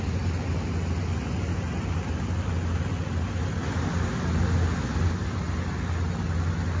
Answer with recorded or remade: recorded